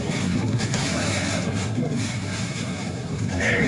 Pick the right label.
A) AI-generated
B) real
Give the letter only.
A